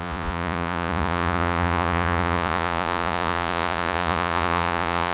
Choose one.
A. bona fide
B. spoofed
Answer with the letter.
B